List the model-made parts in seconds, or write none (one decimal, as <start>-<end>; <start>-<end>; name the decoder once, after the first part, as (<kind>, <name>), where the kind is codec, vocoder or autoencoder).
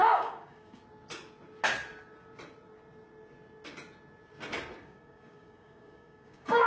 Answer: 0.0-0.8 (codec, DAC); 4.8-6.7